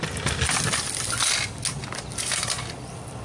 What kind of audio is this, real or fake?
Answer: real